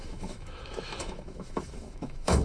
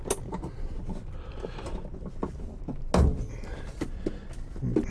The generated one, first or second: first